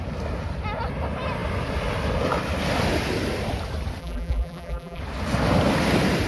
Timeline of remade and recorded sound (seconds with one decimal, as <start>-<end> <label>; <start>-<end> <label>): 0.0-4.0 recorded; 4.0-5.0 remade; 5.0-6.3 recorded